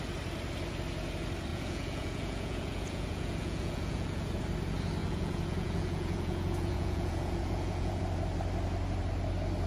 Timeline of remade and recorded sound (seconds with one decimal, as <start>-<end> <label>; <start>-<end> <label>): 0.0-1.5 recorded; 1.5-4.4 remade; 4.4-5.0 recorded; 5.0-8.0 remade; 8.0-9.7 recorded